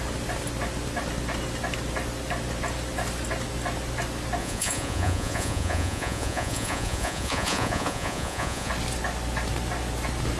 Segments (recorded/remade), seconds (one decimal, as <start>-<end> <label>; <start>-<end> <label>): 0.0-4.4 recorded; 4.4-8.7 remade; 8.7-10.4 recorded